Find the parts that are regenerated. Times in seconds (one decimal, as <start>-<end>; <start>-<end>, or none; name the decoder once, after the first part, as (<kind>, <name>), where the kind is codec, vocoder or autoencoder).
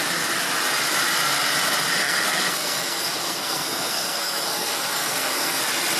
2.0-5.6 (codec, SNAC)